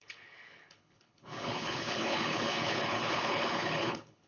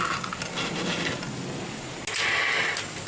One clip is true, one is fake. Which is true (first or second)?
second